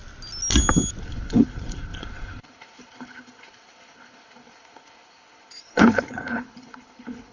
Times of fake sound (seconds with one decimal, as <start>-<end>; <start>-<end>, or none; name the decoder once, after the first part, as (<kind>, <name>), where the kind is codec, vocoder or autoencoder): 1.0-7.3 (codec, HILCodec)